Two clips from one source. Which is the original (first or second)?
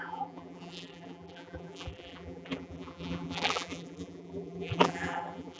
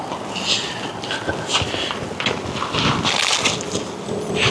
second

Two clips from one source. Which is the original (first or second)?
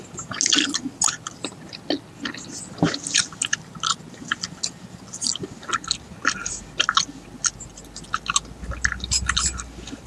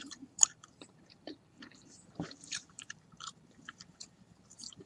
first